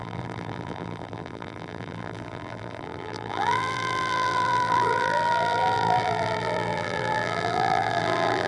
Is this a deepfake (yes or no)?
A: yes